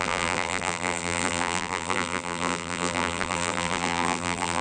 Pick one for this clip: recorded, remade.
remade